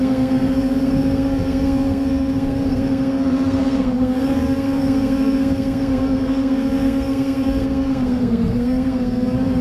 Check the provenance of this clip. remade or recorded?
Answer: remade